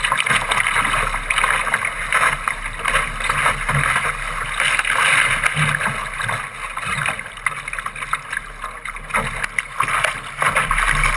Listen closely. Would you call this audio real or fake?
real